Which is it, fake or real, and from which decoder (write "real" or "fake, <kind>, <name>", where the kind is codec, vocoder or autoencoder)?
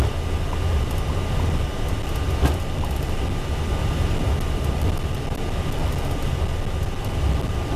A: real